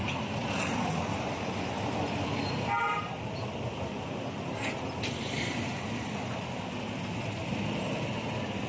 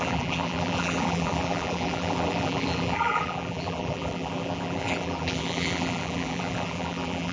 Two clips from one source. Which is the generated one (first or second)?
second